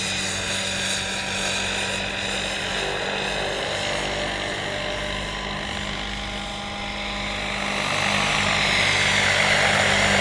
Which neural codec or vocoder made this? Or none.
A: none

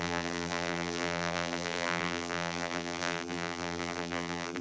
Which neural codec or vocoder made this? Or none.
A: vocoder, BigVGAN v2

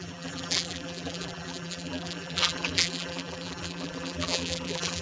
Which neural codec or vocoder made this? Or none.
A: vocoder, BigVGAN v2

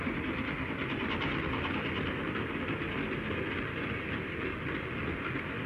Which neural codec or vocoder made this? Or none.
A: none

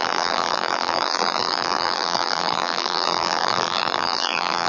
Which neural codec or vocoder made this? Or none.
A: vocoder, BigVGAN v2